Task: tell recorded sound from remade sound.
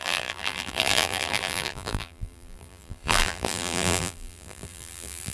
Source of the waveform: remade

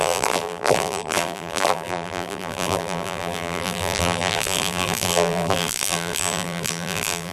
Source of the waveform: remade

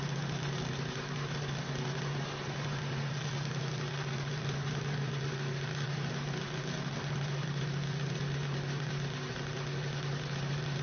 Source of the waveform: recorded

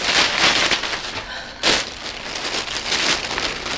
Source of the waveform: recorded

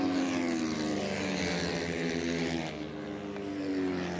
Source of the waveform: recorded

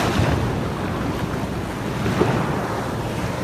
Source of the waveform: recorded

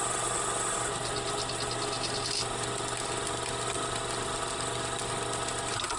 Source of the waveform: recorded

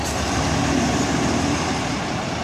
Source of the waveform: remade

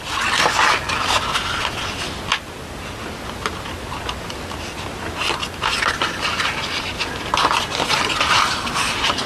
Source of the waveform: recorded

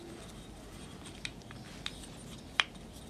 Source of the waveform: remade